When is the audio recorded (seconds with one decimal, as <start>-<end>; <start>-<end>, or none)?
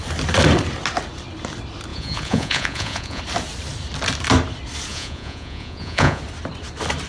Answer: 0.0-1.9; 3.2-4.9; 6.2-7.1